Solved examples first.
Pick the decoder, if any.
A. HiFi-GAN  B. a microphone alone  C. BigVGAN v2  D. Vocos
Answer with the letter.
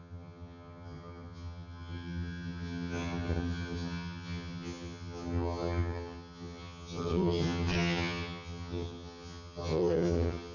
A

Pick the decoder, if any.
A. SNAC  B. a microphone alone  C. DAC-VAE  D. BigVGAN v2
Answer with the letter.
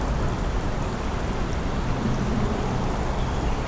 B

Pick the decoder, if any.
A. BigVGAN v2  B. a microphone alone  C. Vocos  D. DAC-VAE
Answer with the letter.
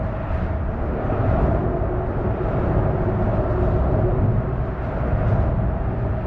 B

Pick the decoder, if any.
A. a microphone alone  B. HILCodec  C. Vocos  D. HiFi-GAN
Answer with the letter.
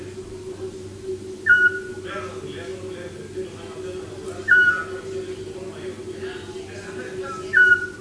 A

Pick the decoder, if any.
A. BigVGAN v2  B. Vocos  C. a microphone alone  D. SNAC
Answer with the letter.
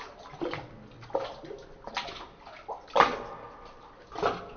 C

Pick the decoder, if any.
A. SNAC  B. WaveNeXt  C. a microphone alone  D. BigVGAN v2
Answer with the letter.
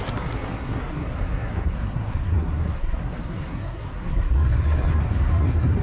A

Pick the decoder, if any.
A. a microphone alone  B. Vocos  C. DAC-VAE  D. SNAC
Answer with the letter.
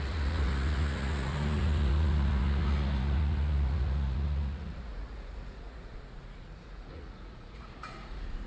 B